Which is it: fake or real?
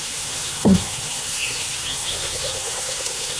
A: fake